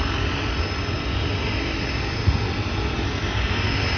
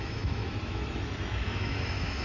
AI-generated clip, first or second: second